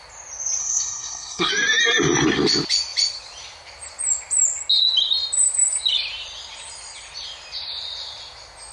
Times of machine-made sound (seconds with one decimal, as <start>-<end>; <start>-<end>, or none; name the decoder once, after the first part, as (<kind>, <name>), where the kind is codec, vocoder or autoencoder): 0.6-1.5 (codec, SNAC)